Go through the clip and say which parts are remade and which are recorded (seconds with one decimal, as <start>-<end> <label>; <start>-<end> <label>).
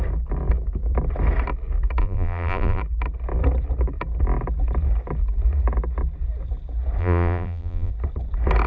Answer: 0.0-2.0 recorded; 2.0-2.8 remade; 2.8-7.0 recorded; 7.0-7.9 remade; 7.9-8.7 recorded